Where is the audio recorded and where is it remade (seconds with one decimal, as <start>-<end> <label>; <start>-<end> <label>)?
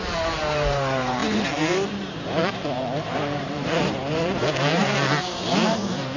0.0-6.2 remade